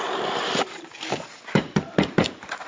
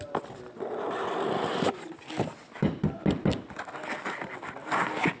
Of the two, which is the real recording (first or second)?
second